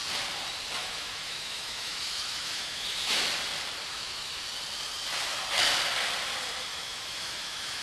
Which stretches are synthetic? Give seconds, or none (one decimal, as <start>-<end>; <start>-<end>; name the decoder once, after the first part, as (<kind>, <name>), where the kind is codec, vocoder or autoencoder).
0.8-3.2 (autoencoder, DAC-VAE); 3.9-4.4; 6.7-7.8